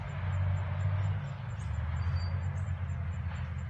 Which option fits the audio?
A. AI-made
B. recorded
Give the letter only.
B